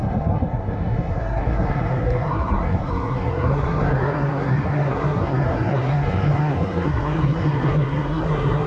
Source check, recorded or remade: remade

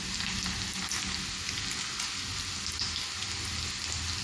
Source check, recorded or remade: recorded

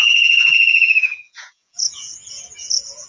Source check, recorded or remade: remade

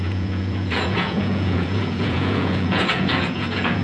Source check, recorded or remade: remade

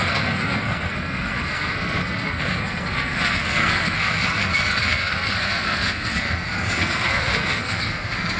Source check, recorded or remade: remade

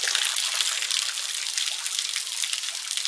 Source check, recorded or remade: recorded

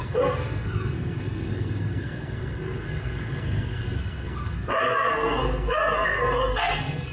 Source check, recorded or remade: remade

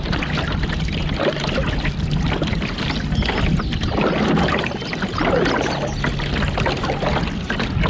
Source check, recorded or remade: recorded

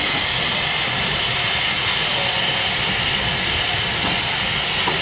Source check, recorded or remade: recorded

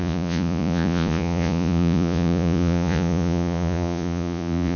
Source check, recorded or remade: remade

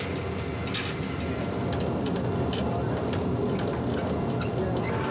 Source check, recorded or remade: recorded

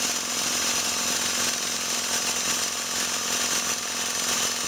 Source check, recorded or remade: recorded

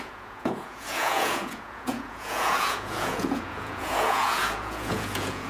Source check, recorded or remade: remade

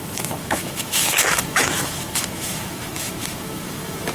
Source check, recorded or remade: remade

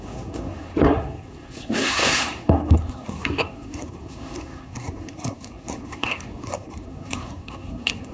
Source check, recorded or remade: remade